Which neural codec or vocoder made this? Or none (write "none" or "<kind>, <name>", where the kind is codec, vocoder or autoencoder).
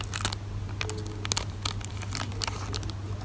none